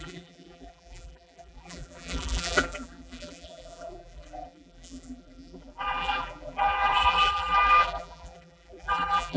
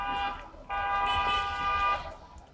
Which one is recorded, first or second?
second